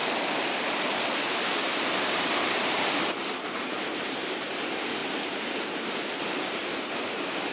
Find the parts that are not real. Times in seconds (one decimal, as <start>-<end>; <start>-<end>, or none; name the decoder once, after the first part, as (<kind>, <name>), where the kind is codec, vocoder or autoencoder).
0.0-4.5 (vocoder, BigVGAN v2); 5.0-7.1